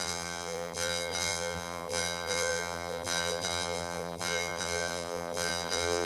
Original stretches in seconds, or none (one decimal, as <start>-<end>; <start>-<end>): none

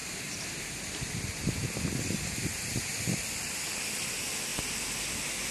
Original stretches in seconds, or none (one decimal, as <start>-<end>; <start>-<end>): 1.8-5.5

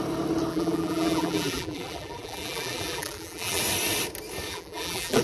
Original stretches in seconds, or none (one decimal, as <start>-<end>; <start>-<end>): 0.0-0.5; 3.6-4.5